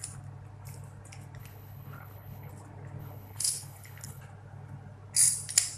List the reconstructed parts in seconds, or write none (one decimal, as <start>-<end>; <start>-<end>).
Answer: 1.4-2.5; 3.0-4.2